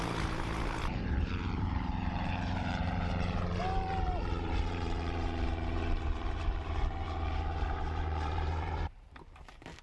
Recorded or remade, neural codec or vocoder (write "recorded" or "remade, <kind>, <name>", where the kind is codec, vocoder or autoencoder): remade, vocoder, BigVGAN v2